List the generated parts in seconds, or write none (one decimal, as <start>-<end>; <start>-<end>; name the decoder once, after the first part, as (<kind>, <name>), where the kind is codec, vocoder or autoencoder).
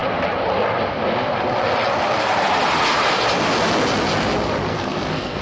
4.7-5.4 (codec, SNAC)